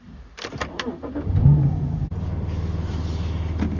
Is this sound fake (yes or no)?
yes